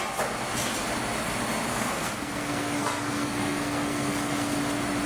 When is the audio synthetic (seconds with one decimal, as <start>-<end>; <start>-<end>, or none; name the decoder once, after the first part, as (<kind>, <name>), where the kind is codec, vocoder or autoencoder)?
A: 1.7-4.6 (codec, SNAC)